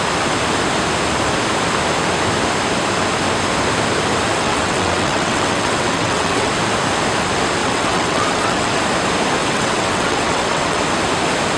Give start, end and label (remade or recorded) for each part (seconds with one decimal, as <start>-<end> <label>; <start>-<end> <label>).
0.0-4.3 recorded; 4.3-6.5 remade; 6.5-7.6 recorded; 7.6-8.8 remade; 8.8-9.4 recorded; 9.4-10.8 remade; 10.8-11.6 recorded